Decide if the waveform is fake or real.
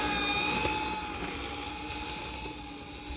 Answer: real